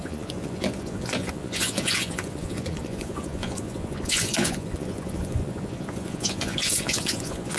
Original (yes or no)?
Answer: no